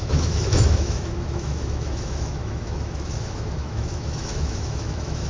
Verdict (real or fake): fake